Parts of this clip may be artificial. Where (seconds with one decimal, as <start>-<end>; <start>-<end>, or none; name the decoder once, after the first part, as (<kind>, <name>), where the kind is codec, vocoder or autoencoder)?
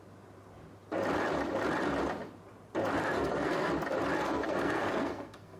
3.0-3.7 (codec, SNAC); 4.2-5.6